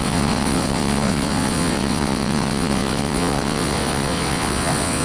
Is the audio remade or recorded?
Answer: remade